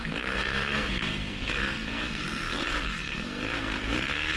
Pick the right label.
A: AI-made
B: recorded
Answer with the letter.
A